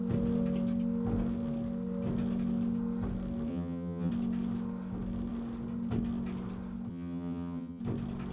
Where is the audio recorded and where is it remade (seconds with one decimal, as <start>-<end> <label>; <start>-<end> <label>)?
0.0-3.5 recorded; 3.5-4.1 remade; 4.1-6.9 recorded; 6.9-7.8 remade; 7.8-8.3 recorded